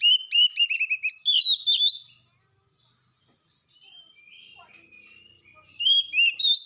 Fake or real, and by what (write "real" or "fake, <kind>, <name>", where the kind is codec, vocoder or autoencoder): real